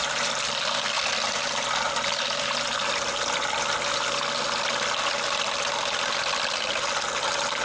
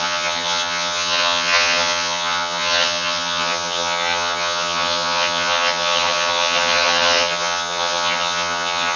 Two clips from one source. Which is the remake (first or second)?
second